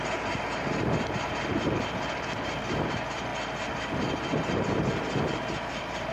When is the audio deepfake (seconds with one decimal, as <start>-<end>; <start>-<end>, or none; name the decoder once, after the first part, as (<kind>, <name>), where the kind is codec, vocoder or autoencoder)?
none